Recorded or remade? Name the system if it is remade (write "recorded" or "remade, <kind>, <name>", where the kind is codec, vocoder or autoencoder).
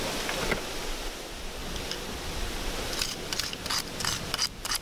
recorded